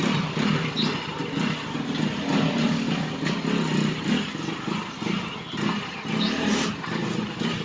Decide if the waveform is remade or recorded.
recorded